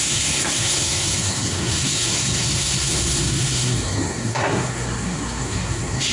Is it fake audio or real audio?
fake